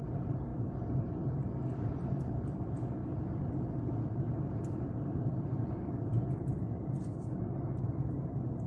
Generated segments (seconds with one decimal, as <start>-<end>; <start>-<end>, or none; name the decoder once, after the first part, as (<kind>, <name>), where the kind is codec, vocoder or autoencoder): none